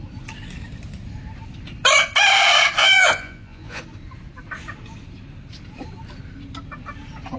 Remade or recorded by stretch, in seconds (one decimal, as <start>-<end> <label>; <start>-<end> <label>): 0.0-2.8 recorded; 2.8-3.8 remade; 3.8-7.4 recorded